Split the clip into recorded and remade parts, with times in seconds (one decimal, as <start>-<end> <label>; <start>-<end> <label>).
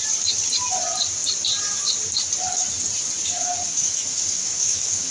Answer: 0.0-3.7 recorded; 3.7-5.1 remade